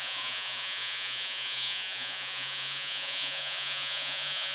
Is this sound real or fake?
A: fake